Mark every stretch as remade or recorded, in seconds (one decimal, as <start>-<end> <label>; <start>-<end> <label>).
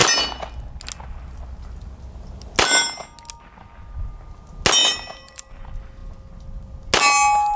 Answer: 0.0-4.8 recorded; 4.8-5.6 remade; 5.6-7.6 recorded